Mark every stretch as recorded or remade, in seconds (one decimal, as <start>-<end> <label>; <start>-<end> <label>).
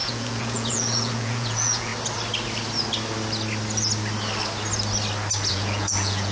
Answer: 0.0-1.9 remade; 1.9-5.5 recorded; 5.5-6.3 remade